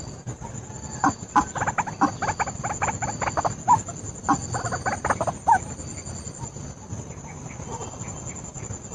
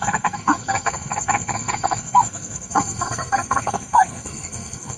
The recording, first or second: first